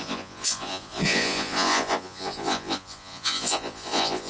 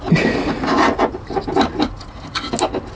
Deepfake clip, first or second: first